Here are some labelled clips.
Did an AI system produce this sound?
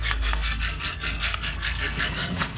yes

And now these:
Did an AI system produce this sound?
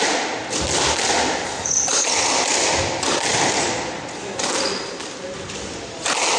no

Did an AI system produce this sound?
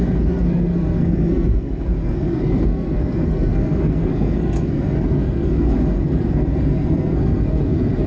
yes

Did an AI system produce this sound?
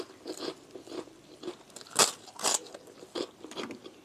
no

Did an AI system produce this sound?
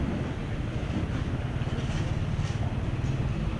no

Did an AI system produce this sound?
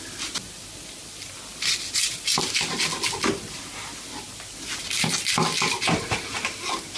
no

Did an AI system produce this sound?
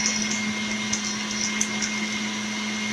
no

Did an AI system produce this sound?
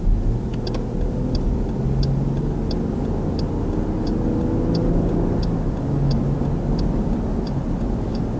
no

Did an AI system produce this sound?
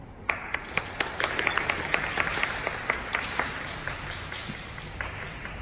yes